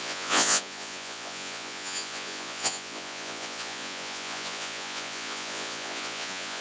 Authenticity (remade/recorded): remade